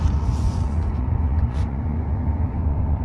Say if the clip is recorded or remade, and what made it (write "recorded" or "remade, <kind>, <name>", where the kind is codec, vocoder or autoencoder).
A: remade, vocoder, Vocos